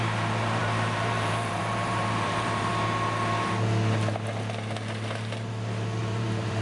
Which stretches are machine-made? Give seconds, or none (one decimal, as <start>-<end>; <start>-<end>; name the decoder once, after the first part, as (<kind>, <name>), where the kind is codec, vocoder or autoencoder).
0.0-2.7 (vocoder, BigVGAN v2); 6.0-6.6

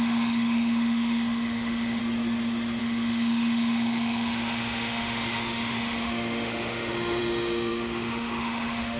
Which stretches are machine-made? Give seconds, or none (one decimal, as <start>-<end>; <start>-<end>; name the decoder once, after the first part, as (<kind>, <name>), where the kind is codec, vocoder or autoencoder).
0.0-2.0 (autoencoder, DAC-VAE); 2.8-9.0